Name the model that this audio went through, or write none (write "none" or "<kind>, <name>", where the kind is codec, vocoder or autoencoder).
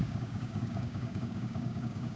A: codec, DAC